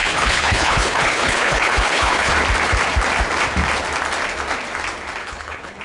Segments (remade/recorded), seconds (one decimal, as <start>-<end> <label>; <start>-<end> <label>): 0.0-2.3 remade; 2.3-5.2 recorded; 5.2-5.8 remade